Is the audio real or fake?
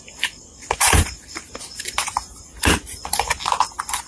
fake